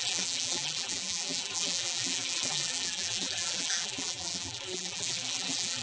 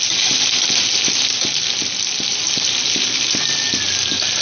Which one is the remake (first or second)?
first